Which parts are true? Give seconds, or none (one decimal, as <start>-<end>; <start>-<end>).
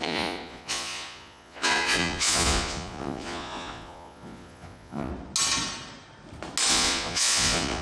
5.1-6.7